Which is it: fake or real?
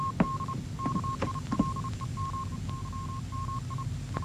real